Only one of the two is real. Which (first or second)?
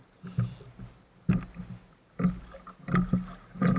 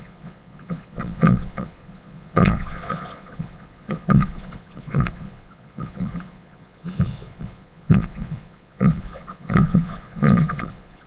first